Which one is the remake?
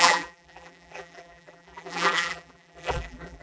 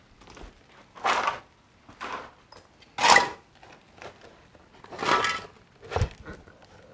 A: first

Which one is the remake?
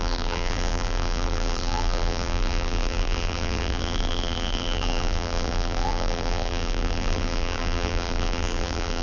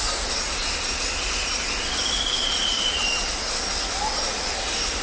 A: first